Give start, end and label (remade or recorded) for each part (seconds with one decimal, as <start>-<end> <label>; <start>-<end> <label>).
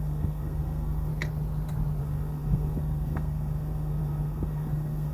0.0-1.1 remade; 1.1-2.0 recorded; 2.0-5.1 remade